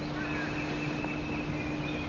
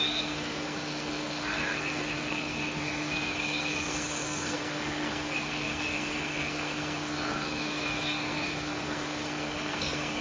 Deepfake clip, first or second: second